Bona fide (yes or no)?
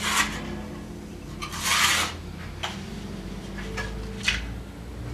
yes